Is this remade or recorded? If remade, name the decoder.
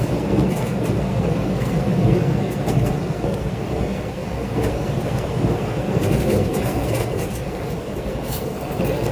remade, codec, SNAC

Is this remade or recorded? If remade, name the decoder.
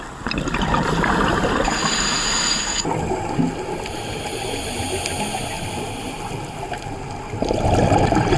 recorded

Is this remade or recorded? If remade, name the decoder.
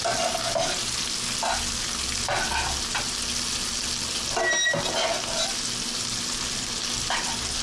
recorded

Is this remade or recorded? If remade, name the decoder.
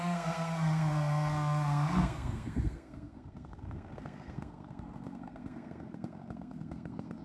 remade, codec, SNAC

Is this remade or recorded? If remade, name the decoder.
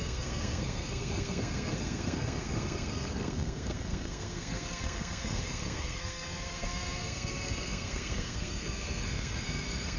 remade, codec, SNAC